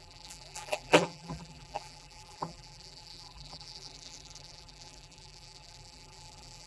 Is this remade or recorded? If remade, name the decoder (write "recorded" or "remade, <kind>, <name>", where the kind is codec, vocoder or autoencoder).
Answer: remade, vocoder, BigVGAN v2